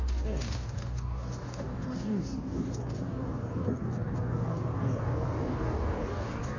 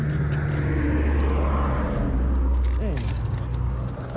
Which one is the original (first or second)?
second